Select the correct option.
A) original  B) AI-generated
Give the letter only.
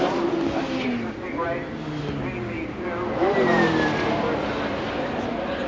A